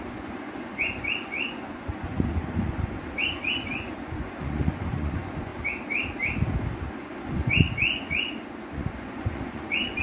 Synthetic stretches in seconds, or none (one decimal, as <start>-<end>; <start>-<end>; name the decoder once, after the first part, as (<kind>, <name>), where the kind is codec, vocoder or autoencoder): 0.0-5.5 (vocoder, Vocos); 6.9-10.0